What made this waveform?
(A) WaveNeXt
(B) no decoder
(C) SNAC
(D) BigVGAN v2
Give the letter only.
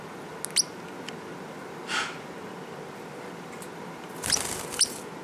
B